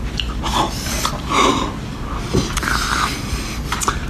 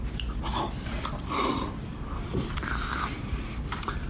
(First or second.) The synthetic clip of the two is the second